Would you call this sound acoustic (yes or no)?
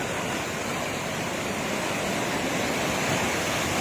yes